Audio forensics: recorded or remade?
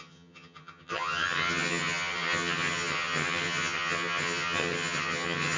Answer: remade